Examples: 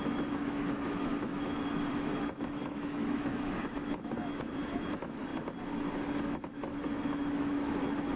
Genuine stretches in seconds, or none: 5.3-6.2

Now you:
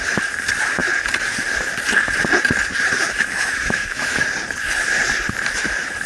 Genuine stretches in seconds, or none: 0.0-3.0; 4.2-6.1

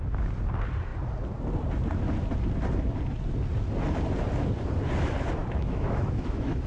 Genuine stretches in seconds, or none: 0.0-5.4

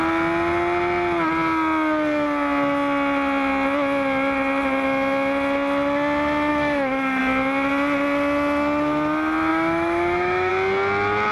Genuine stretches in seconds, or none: 0.0-6.5; 7.2-9.5; 10.5-11.3